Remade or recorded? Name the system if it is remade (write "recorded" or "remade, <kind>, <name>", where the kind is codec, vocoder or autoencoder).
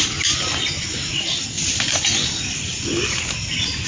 recorded